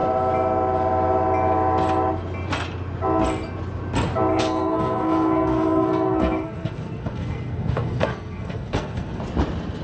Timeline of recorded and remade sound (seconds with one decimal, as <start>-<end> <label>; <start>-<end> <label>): 0.0-4.3 recorded; 4.3-9.2 remade; 9.2-9.8 recorded